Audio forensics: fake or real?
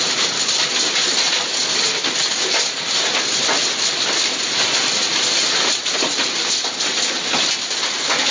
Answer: real